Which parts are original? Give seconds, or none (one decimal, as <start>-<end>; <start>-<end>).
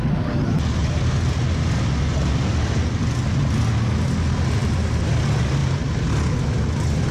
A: 0.0-7.1